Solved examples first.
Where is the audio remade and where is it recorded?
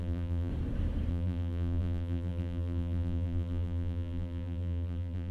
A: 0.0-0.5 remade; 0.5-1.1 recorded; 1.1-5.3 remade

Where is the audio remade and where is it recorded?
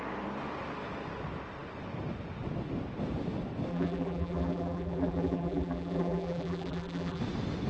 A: 0.0-3.7 recorded; 3.7-7.2 remade; 7.2-7.7 recorded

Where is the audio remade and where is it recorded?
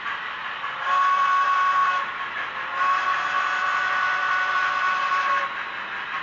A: 0.0-6.2 recorded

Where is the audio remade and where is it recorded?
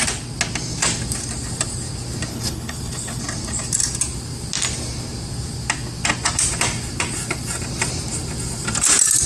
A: 0.0-2.3 recorded; 2.3-3.2 remade; 3.2-9.3 recorded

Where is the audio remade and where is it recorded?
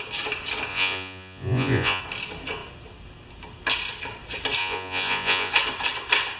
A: 0.0-0.7 recorded; 0.7-2.0 remade; 2.0-4.6 recorded; 4.6-5.5 remade; 5.5-6.4 recorded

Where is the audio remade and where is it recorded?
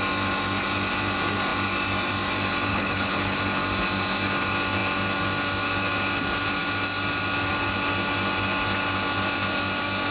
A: 0.0-2.7 recorded; 2.7-3.4 remade; 3.4-10.1 recorded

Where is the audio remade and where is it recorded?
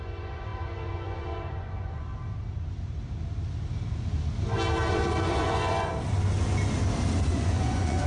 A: 0.0-2.1 remade; 2.1-4.9 recorded; 4.9-5.9 remade; 5.9-7.3 recorded; 7.3-8.1 remade